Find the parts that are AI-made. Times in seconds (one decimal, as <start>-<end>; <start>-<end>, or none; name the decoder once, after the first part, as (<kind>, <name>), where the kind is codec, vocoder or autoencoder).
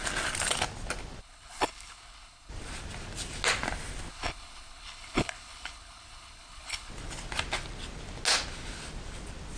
1.2-2.5 (codec, HILCodec); 4.1-6.9